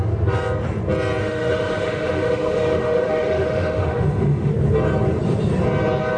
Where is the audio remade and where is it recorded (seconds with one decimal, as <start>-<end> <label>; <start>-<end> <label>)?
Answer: 0.0-1.2 recorded; 1.2-4.5 remade; 4.5-6.2 recorded